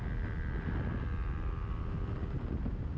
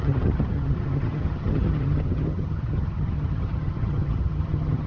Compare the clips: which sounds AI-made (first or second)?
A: second